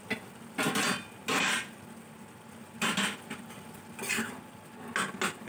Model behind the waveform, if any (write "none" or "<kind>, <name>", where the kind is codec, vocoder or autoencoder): none